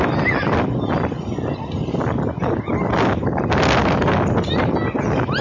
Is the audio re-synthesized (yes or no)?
no